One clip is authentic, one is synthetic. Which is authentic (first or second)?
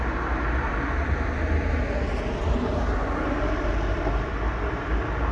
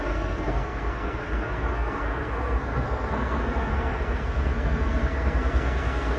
first